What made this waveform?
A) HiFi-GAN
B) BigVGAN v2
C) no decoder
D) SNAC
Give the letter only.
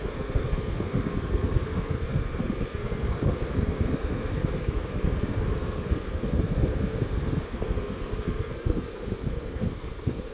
D